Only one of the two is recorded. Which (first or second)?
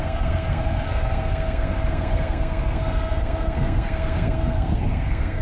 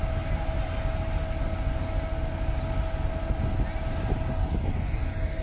second